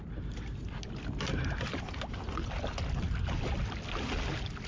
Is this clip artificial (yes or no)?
no